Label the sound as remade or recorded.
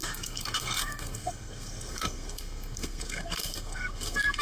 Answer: remade